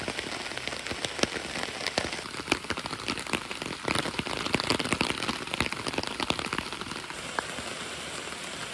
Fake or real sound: real